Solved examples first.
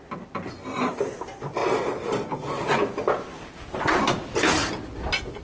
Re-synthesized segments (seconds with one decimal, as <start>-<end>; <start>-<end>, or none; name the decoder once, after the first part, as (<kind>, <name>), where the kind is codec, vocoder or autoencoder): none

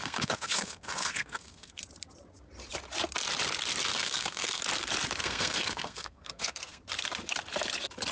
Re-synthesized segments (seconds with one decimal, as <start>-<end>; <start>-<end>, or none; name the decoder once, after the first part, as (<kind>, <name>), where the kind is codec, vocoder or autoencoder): 0.0-1.8 (codec, SNAC); 3.9-4.6; 5.2-6.8

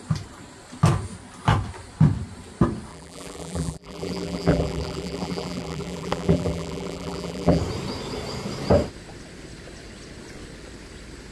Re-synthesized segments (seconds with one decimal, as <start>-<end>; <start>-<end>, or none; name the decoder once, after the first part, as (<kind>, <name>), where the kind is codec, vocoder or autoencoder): 2.9-7.6 (vocoder, BigVGAN v2)